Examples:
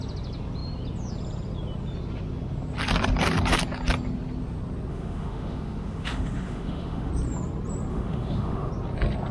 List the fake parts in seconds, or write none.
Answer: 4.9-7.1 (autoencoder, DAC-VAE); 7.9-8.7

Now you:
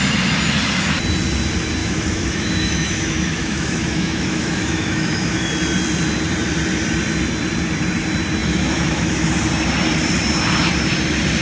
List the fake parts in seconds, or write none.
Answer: 1.8-5.5 (autoencoder, DAC-VAE); 8.4-9.3

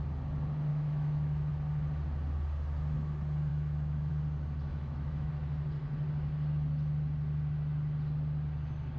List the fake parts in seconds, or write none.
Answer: 0.7-1.5 (autoencoder, DAC-VAE); 3.5-4.1; 4.7-5.3

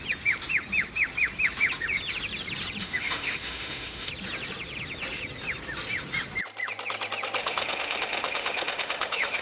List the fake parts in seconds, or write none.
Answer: 2.8-4.1 (autoencoder, DAC-VAE); 7.4-9.4

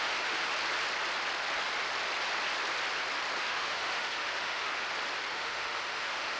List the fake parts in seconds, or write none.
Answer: 0.0-0.5 (autoencoder, DAC-VAE); 3.4-4.7; 5.3-6.4

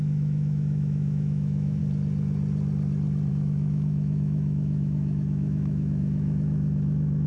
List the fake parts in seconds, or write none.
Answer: 0.0-1.8 (autoencoder, DAC-VAE); 3.3-7.3

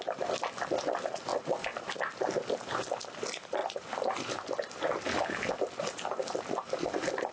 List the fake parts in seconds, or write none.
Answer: none

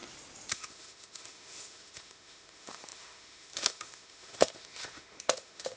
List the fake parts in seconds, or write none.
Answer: 0.5-5.8 (autoencoder, DAC-VAE)